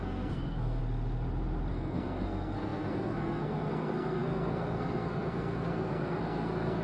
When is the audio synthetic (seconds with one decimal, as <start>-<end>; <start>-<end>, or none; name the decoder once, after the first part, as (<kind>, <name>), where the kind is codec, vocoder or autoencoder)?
0.0-0.8 (codec, SNAC); 1.7-6.8